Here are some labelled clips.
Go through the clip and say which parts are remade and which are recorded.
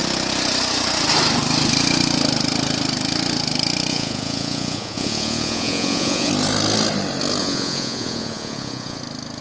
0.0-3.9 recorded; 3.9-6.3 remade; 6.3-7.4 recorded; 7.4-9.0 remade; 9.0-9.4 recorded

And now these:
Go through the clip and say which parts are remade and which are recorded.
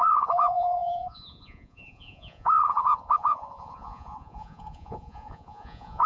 0.0-6.1 remade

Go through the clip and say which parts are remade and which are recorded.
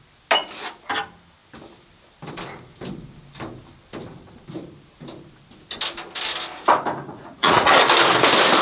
0.0-7.1 recorded; 7.1-7.7 remade; 7.7-8.6 recorded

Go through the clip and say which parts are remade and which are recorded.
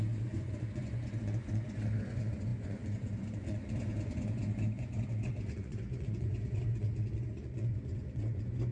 0.0-8.7 remade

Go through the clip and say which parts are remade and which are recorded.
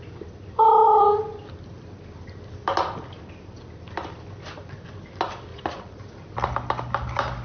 0.0-5.5 recorded; 5.5-6.0 remade; 6.0-7.4 recorded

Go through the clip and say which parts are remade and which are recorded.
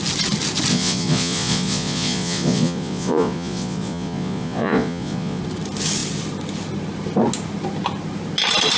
0.0-0.7 recorded; 0.7-5.4 remade; 5.4-8.8 recorded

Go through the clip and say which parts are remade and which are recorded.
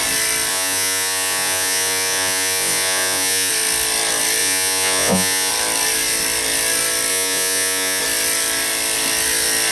0.0-0.5 recorded; 0.5-3.5 remade; 3.5-4.4 recorded; 4.4-5.5 remade; 5.5-7.1 recorded; 7.1-8.0 remade; 8.0-9.7 recorded